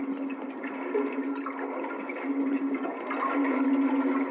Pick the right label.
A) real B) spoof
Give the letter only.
A